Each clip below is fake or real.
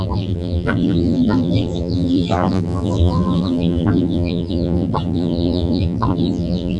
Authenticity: fake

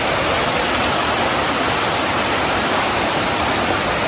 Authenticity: real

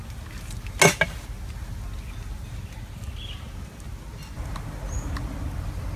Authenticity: real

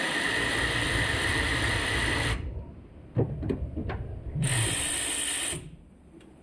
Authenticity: fake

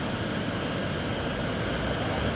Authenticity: real